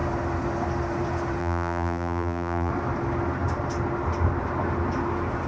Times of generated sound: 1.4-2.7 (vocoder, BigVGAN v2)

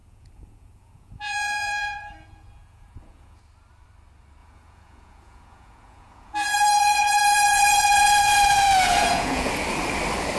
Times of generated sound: 0.0-3.4 (vocoder, Vocos); 4.4-9.5

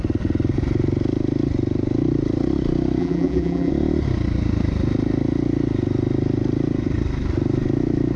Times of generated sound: 3.0-3.7 (vocoder, BigVGAN v2)